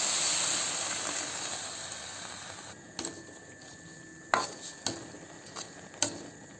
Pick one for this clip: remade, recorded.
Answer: recorded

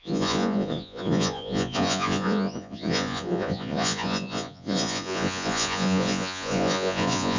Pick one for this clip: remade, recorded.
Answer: remade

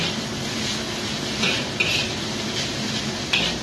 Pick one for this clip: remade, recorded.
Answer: recorded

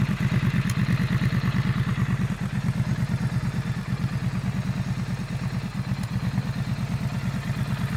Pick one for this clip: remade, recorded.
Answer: recorded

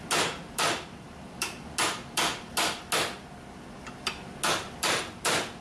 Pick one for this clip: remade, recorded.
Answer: recorded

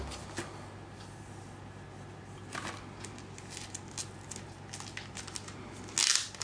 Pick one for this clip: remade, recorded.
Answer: recorded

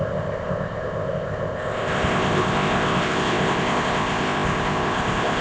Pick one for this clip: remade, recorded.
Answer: remade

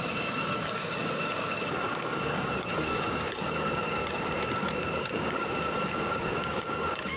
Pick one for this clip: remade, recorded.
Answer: remade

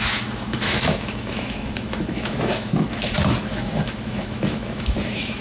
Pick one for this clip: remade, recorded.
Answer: remade